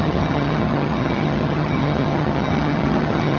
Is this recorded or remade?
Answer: remade